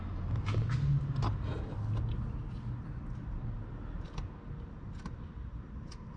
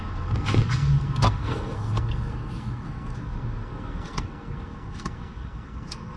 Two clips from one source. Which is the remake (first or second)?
second